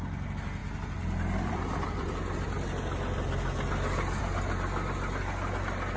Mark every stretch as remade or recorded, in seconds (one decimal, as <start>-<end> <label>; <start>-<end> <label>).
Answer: 0.0-6.0 recorded